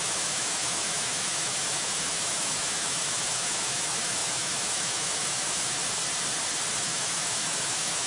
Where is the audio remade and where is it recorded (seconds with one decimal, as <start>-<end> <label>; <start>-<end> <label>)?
0.0-5.8 remade; 5.8-6.8 recorded; 6.8-8.1 remade